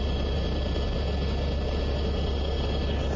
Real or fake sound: real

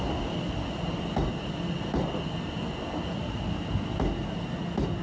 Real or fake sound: real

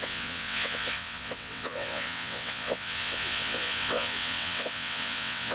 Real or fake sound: fake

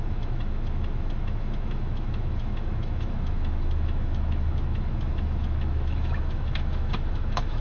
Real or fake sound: fake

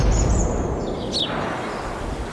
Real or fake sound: real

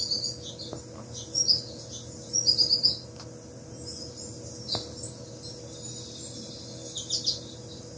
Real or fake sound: real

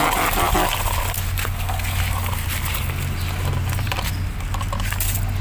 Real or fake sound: real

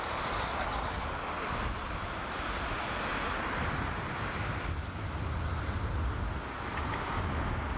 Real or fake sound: real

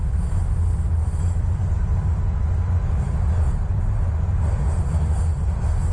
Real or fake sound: real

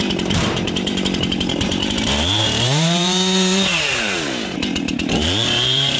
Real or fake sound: fake